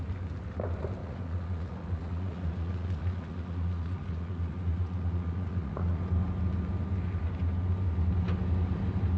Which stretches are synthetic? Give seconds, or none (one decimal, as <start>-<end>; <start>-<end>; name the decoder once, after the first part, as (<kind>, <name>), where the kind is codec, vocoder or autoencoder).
1.0-6.0 (vocoder, Vocos)